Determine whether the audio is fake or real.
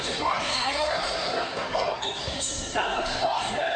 fake